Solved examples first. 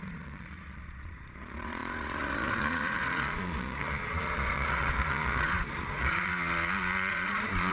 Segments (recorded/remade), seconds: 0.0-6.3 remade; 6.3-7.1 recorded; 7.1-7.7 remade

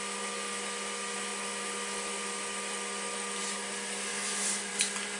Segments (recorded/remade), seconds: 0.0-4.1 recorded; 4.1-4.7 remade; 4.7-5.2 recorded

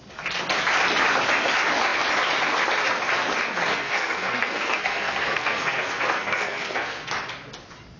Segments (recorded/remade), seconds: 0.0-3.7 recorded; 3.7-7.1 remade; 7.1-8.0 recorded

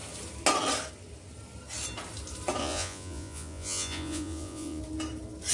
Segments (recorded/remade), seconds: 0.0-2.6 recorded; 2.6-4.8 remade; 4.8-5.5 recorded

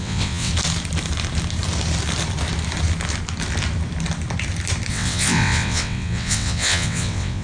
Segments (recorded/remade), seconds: 0.0-0.5 remade; 0.5-4.9 recorded; 4.9-7.4 remade

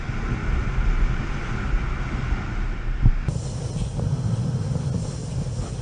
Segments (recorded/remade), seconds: 0.0-5.8 recorded

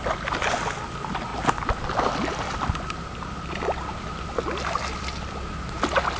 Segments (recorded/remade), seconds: 0.0-6.2 recorded

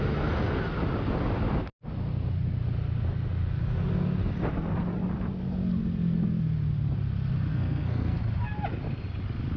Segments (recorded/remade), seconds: 0.0-7.5 recorded; 7.5-8.2 remade; 8.2-9.6 recorded